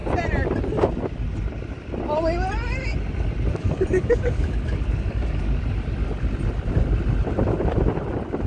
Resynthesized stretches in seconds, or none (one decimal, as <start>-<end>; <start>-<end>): 3.5-5.6